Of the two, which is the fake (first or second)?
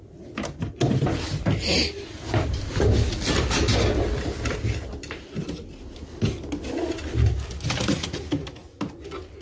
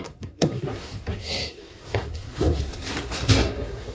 second